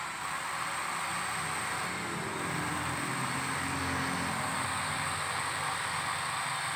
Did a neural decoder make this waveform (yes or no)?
no